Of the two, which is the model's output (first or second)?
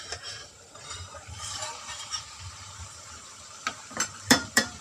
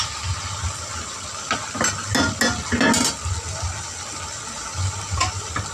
first